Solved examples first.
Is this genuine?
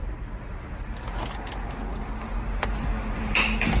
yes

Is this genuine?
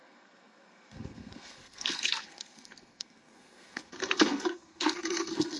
no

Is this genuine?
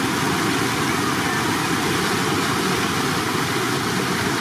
yes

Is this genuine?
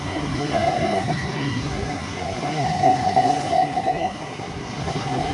no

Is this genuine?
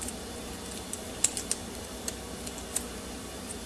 yes